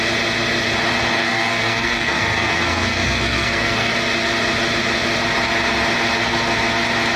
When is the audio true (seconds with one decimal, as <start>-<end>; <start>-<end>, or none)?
0.0-1.2; 3.9-7.2